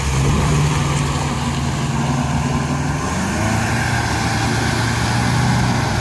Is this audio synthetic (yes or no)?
no